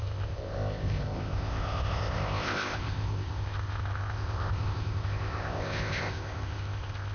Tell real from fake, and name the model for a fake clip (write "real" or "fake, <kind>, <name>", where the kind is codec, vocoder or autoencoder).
fake, codec, ZipCodec